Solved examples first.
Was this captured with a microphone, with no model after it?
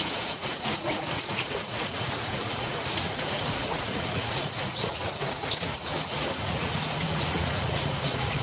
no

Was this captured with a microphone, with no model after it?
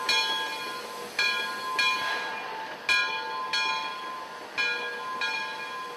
yes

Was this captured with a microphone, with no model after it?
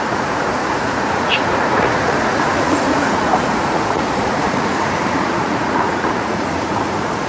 no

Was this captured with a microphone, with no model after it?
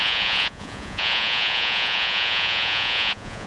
no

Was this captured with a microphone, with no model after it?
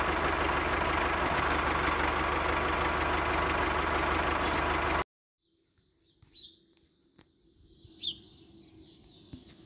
yes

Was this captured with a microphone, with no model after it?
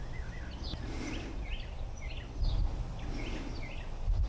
yes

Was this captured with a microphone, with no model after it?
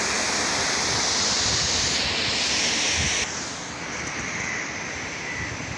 yes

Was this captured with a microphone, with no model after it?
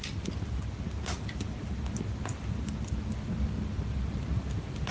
yes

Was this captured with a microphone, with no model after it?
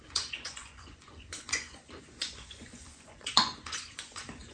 no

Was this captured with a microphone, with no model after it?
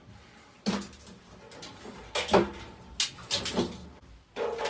yes